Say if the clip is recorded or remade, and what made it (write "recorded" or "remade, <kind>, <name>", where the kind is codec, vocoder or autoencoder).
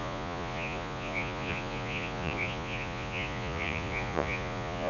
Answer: remade, vocoder, Vocos